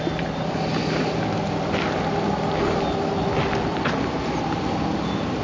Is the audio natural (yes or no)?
yes